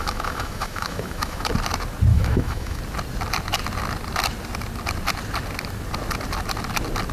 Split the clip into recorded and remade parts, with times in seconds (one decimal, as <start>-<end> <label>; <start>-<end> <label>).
0.0-1.5 remade; 1.5-2.1 recorded; 2.1-2.8 remade; 2.8-7.1 recorded